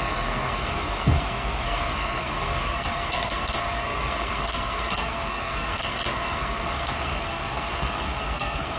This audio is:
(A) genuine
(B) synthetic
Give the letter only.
B